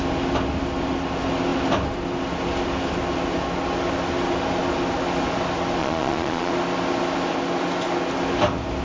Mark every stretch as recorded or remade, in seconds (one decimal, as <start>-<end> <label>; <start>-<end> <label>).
0.0-5.8 recorded; 5.8-6.5 remade; 6.5-8.8 recorded